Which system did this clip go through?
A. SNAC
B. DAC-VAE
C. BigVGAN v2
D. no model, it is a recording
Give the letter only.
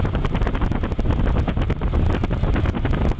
D